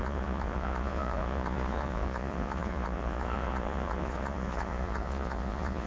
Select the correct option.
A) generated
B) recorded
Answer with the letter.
A